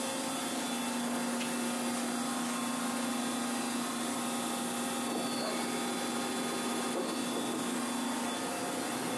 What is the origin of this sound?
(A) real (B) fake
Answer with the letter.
A